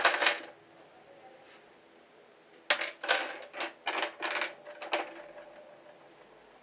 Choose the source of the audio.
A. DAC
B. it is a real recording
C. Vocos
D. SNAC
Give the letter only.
B